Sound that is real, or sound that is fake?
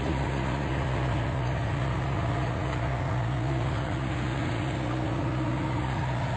fake